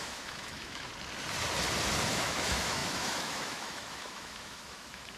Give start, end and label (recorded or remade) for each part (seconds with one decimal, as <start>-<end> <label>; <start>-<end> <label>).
0.0-0.9 remade; 0.9-2.1 recorded; 2.1-5.2 remade